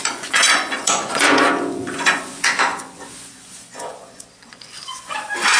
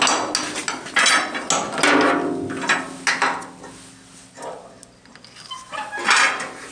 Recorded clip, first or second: second